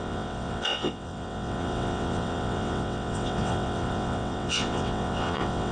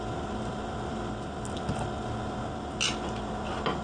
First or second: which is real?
second